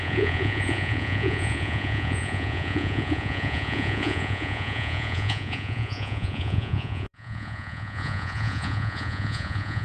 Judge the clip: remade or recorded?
remade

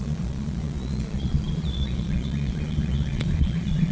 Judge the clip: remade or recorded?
remade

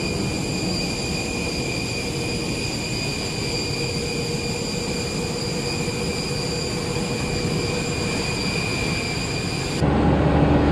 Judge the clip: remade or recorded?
recorded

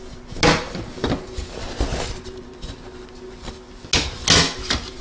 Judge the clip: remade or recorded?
recorded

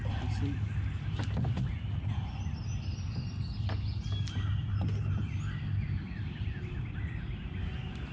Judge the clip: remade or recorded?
recorded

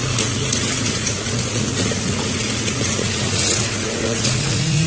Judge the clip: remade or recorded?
remade